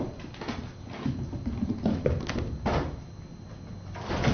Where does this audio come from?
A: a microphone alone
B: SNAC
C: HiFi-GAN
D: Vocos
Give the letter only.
A